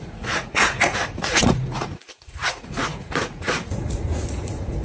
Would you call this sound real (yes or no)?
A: no